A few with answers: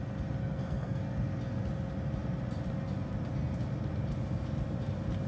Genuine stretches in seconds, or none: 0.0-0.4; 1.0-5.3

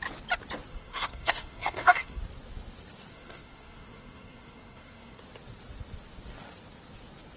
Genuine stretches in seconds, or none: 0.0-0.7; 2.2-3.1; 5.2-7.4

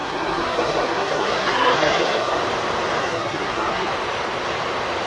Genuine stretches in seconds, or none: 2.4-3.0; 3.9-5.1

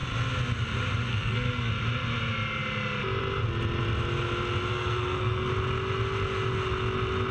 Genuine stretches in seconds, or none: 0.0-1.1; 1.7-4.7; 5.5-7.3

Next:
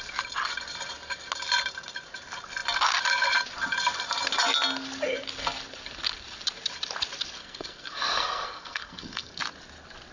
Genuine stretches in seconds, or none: 0.0-7.4; 9.3-10.1

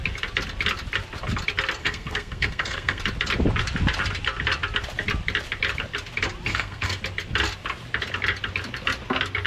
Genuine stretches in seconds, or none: 0.0-1.8; 3.0-6.5; 7.0-9.5

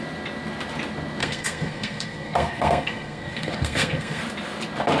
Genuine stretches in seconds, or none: 0.0-1.2; 4.2-5.0